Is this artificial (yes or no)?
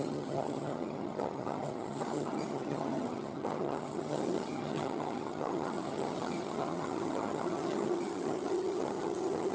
yes